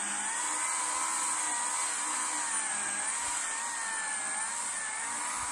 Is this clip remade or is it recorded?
recorded